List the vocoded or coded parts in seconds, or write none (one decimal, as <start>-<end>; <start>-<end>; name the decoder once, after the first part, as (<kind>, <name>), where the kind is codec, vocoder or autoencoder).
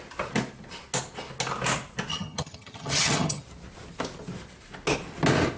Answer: 2.1-3.4 (vocoder, HiFi-GAN)